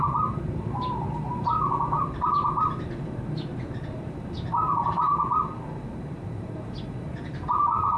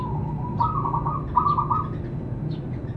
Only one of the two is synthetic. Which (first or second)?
first